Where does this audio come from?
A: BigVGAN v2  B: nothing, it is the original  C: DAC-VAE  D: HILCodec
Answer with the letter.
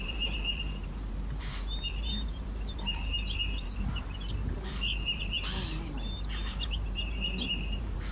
A